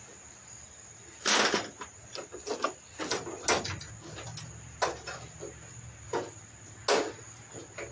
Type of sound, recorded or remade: recorded